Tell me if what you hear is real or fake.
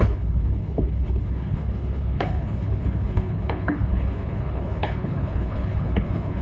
fake